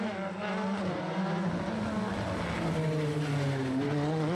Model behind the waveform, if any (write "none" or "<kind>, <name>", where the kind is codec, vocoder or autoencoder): none